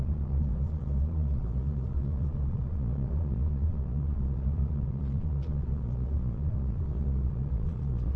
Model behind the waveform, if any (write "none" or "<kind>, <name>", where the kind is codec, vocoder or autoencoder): vocoder, Vocos